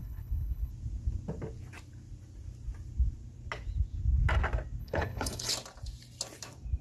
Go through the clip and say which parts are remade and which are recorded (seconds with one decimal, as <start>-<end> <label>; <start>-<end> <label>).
0.0-0.7 remade; 0.7-4.8 recorded; 4.8-5.5 remade; 5.5-6.8 recorded